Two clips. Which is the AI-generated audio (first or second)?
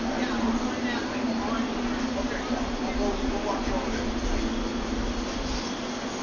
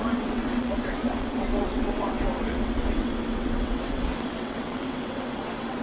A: second